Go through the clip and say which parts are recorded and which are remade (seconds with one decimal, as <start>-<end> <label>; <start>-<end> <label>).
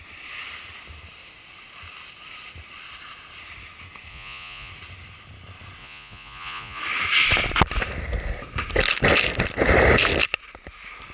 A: 0.0-4.1 recorded; 4.1-4.7 remade; 4.7-5.8 recorded; 5.8-6.8 remade; 6.8-11.1 recorded